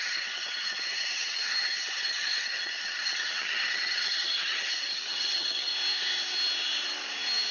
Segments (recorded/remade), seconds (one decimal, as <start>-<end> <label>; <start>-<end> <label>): 0.0-5.7 remade; 5.7-7.5 recorded